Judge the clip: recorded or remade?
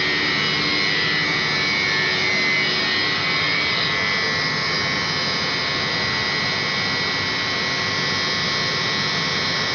recorded